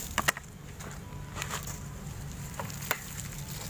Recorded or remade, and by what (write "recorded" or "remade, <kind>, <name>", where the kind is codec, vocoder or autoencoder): recorded